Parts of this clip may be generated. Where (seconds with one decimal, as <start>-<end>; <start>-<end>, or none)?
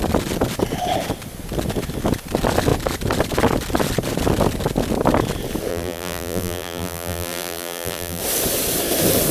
5.7-8.2